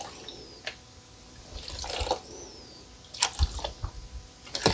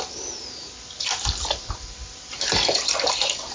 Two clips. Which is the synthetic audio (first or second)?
second